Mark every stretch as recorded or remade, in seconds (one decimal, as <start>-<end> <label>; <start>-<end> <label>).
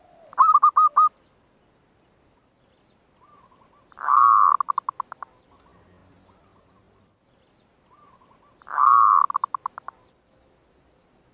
0.0-11.3 recorded